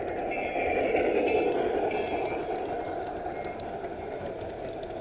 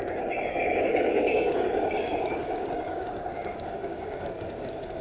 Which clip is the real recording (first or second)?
first